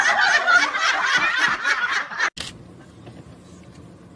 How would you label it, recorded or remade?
recorded